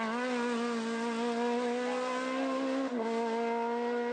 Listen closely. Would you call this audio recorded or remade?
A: recorded